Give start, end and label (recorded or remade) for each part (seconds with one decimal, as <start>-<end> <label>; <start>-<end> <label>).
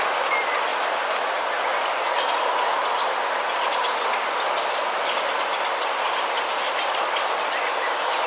0.0-8.3 recorded